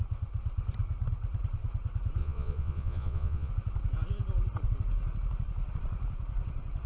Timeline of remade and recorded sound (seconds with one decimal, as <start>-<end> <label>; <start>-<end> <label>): 0.0-2.2 recorded; 2.2-3.5 remade; 3.5-6.9 recorded